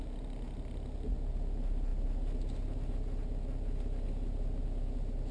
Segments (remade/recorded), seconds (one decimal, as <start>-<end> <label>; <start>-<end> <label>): 0.0-5.3 recorded

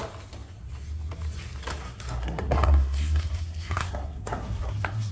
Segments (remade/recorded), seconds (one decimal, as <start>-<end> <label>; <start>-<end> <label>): 0.0-1.7 recorded; 1.7-5.1 remade

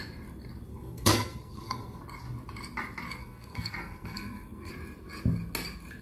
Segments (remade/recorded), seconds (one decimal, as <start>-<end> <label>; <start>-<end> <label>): 0.0-0.7 recorded; 0.7-2.0 remade; 2.0-3.2 recorded; 3.2-4.7 remade; 4.7-6.0 recorded

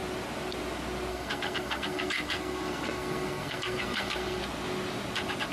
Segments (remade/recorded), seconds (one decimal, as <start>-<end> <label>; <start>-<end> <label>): 0.0-1.1 recorded; 1.1-4.4 remade; 4.4-5.5 recorded